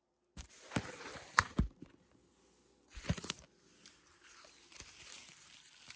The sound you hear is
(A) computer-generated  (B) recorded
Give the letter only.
B